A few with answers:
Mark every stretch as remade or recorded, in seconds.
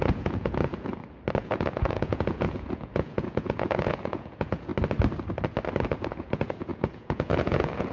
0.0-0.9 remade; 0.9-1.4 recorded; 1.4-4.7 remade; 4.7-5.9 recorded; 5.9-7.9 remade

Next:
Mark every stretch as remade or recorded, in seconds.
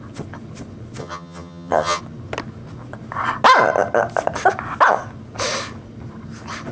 0.0-1.0 recorded; 1.0-2.0 remade; 2.0-6.7 recorded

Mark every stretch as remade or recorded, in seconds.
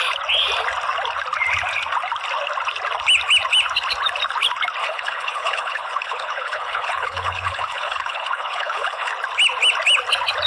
0.0-4.8 recorded; 4.8-9.1 remade; 9.1-10.5 recorded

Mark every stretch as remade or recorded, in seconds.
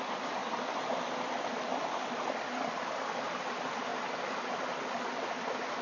0.0-0.4 recorded; 0.4-1.3 remade; 1.3-5.8 recorded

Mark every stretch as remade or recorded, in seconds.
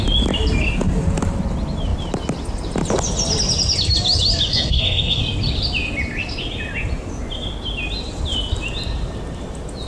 0.0-4.5 recorded; 4.5-5.2 remade; 5.2-9.9 recorded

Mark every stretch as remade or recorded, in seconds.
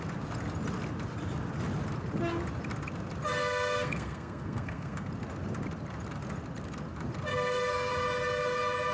0.0-3.4 recorded; 3.4-5.1 remade; 5.1-7.3 recorded; 7.3-7.9 remade; 7.9-8.9 recorded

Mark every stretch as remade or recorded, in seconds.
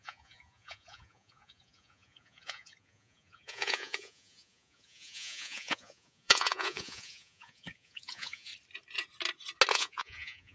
0.0-8.5 remade; 8.5-9.7 recorded; 9.7-10.5 remade